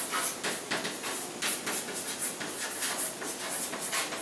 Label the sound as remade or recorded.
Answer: recorded